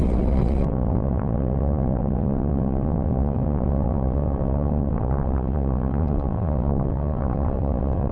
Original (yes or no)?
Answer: no